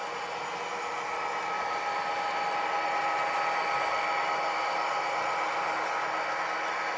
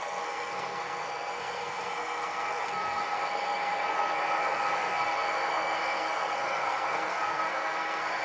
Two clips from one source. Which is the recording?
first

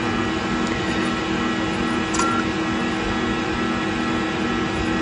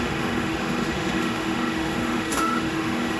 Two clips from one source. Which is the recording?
first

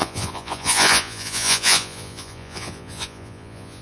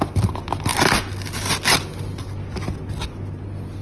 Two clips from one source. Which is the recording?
second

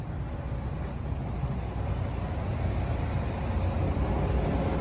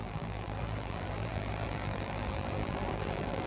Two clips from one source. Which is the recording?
first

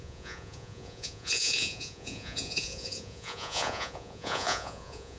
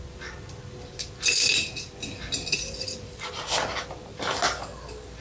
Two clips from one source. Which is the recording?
second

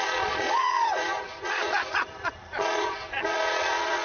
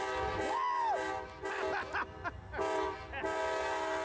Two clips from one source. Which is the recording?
second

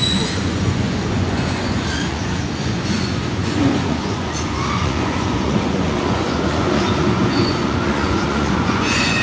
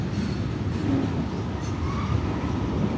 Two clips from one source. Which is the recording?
second